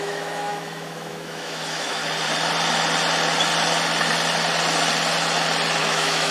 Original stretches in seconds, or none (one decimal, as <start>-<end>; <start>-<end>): 2.0-5.8